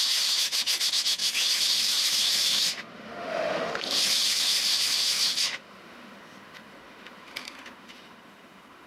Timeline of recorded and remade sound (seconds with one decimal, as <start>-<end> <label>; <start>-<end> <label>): 0.0-8.9 remade